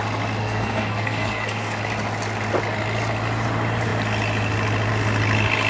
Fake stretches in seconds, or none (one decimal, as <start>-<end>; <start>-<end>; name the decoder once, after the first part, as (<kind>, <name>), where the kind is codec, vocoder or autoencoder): 0.4-1.8 (codec, SNAC)